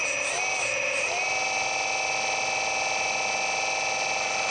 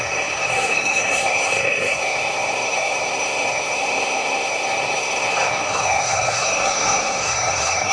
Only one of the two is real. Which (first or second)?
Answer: first